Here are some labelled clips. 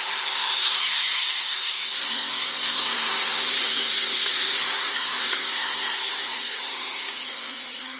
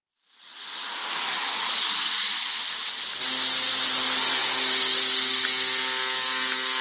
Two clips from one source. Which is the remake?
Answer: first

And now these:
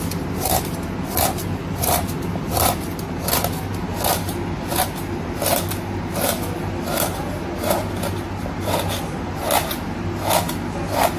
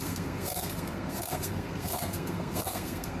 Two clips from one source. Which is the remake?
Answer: second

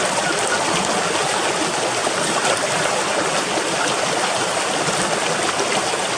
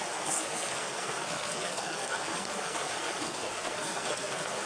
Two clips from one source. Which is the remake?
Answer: second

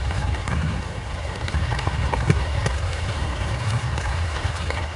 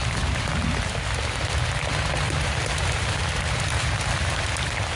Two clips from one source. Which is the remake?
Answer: first